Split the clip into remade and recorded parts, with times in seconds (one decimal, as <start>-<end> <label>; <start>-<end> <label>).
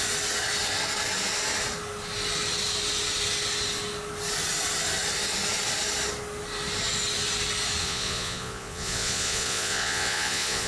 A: 0.0-7.8 recorded; 7.8-10.7 remade